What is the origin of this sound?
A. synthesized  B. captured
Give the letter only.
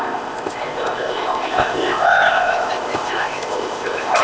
A